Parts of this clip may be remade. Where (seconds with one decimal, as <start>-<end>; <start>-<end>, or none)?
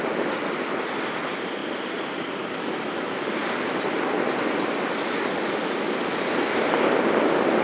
none